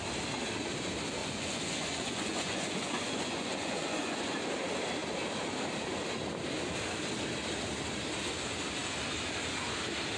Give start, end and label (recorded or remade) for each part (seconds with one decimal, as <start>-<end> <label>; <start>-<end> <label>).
0.0-1.2 recorded; 1.2-4.3 remade; 4.3-10.2 recorded